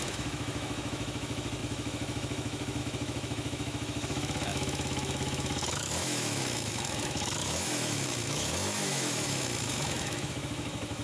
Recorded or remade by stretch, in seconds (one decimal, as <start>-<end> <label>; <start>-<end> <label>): 0.0-11.0 remade